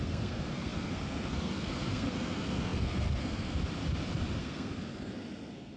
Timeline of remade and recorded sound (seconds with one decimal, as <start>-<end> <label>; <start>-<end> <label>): 0.0-3.6 remade; 3.6-4.4 recorded; 4.4-5.8 remade